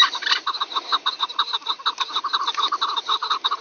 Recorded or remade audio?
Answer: recorded